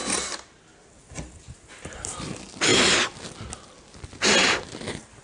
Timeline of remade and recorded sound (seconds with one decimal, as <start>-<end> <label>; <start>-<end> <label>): 0.0-5.2 recorded